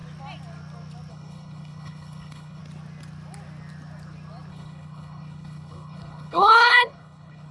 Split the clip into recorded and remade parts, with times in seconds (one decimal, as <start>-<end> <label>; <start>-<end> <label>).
0.0-1.1 recorded; 1.1-2.6 remade; 2.6-4.5 recorded; 4.5-7.5 remade